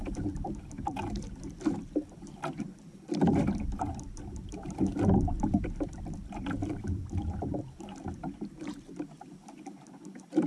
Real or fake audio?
fake